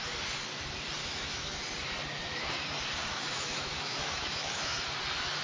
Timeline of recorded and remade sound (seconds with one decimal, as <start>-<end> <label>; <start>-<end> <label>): 0.0-1.0 recorded; 1.0-1.6 remade; 1.6-3.0 recorded; 3.0-4.8 remade; 4.8-5.4 recorded